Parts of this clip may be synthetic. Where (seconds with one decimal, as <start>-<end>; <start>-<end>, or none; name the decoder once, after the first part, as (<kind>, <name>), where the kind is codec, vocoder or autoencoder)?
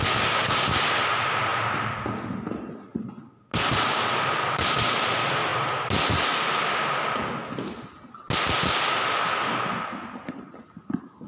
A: none